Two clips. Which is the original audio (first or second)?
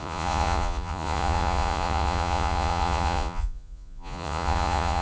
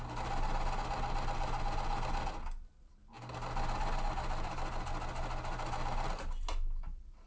second